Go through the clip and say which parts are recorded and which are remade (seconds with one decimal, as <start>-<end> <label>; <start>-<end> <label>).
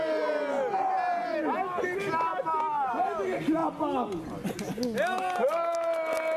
0.0-6.4 recorded